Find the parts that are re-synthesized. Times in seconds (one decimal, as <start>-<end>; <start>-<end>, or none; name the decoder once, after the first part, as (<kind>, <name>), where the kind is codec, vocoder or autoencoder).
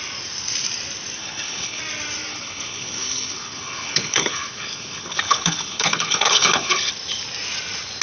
1.2-1.8 (codec, HILCodec); 2.3-6.9